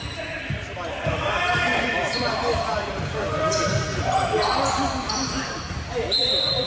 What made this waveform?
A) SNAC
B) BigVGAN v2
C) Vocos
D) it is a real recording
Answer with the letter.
D